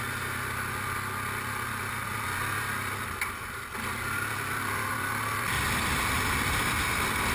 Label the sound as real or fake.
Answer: real